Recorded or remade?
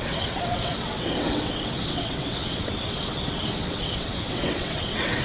remade